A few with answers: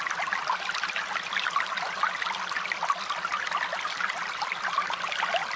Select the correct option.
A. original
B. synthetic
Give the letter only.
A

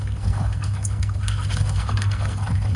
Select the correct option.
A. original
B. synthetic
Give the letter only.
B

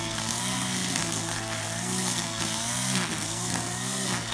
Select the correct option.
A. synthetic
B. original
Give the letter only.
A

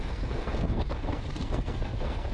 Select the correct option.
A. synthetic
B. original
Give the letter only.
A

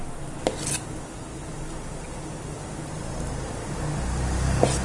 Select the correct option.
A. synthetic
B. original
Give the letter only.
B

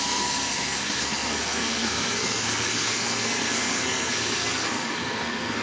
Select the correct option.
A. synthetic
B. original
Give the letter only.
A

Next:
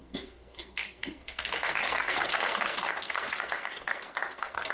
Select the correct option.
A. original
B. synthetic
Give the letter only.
B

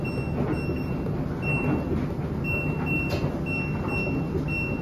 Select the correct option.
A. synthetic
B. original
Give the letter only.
B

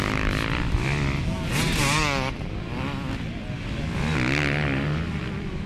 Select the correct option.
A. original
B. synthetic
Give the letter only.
A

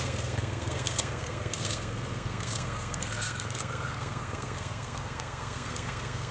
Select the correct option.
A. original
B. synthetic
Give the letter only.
B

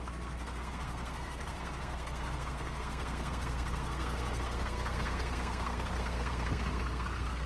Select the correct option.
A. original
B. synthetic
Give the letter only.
B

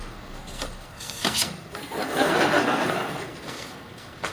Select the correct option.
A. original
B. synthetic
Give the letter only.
B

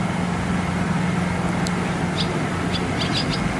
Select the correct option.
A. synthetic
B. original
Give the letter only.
B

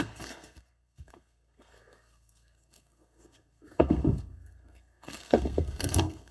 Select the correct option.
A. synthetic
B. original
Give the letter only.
A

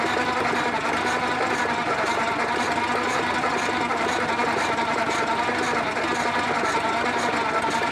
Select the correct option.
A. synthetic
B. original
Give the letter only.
B